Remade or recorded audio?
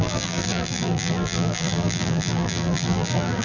remade